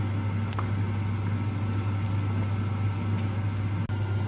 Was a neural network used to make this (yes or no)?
no